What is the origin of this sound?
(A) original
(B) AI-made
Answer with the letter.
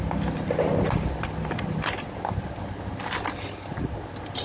A